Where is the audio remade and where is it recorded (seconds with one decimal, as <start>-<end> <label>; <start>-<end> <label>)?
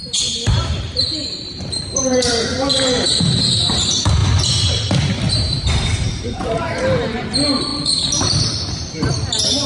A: 0.0-4.2 remade; 4.2-5.3 recorded; 5.3-7.7 remade; 7.7-8.9 recorded; 8.9-9.7 remade